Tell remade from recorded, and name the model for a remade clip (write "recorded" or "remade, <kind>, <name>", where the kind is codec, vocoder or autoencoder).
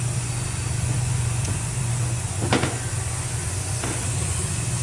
remade, vocoder, Vocos